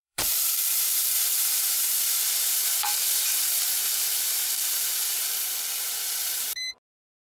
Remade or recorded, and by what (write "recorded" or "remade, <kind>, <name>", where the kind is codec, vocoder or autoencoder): remade, vocoder, BigVGAN v2